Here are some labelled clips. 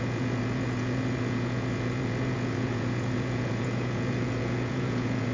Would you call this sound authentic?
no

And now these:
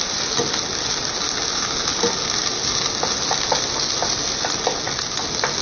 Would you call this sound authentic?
yes